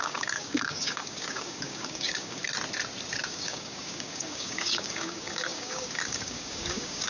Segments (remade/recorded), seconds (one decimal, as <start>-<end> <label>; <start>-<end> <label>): 0.0-2.4 remade; 2.4-3.2 recorded; 3.2-7.1 remade